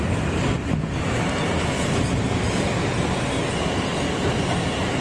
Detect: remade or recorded recorded